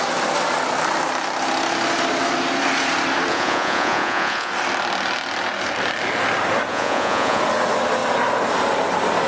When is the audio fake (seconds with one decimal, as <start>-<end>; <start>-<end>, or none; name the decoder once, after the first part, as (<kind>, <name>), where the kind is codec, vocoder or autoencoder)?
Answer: 3.3-4.5 (vocoder, Vocos); 6.7-7.4